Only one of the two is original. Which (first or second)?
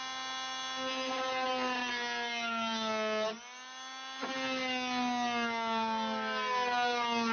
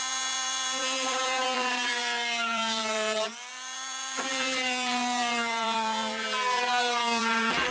first